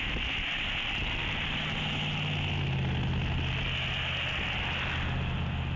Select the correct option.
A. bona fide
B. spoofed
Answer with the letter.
A